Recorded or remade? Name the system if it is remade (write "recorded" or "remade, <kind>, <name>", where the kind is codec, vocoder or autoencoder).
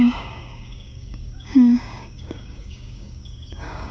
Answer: remade, codec, DAC